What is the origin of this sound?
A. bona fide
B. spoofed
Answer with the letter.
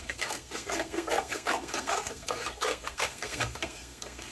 B